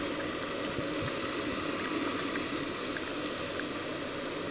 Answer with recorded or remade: recorded